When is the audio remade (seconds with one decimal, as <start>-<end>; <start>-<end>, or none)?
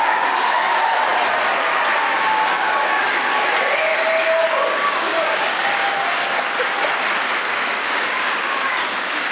0.0-1.1; 2.2-3.4; 4.7-6.2; 7.5-9.3